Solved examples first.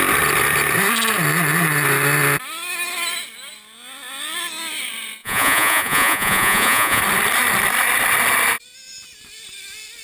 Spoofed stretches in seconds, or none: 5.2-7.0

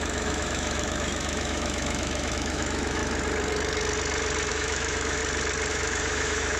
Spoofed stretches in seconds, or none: 0.0-3.0; 4.5-5.2; 5.7-6.6

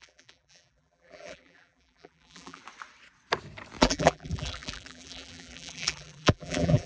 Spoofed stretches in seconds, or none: 0.0-2.6; 3.8-6.9

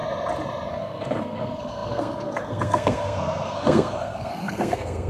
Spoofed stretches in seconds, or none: 0.7-5.1

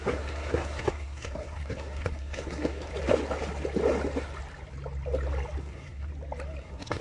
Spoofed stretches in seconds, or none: 0.0-2.9; 5.6-6.1; 6.6-7.0

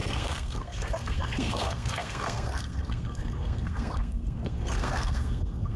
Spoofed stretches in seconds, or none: 0.0-5.8

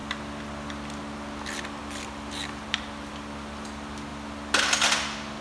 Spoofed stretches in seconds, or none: none

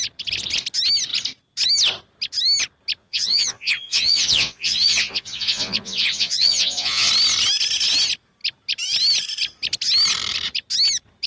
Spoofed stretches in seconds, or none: 3.0-7.1